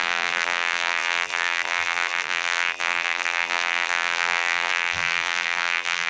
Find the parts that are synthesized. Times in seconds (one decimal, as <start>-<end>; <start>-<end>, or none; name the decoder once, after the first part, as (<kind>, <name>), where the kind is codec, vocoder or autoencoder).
0.0-6.1 (vocoder, BigVGAN v2)